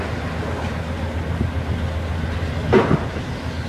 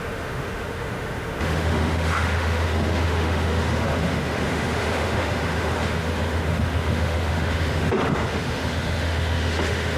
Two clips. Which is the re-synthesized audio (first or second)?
second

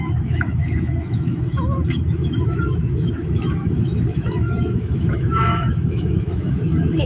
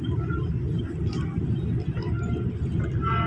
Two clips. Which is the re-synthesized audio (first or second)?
first